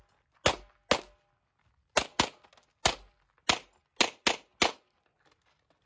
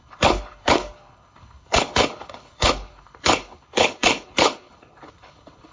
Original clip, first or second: first